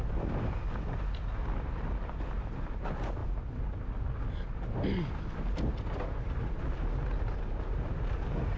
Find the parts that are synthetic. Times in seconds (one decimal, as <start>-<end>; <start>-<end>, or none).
none